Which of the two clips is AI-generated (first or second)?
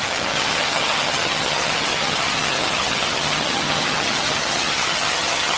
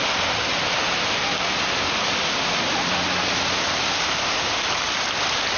first